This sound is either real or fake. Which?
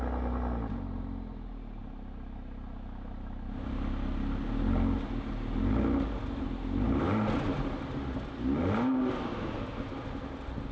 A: real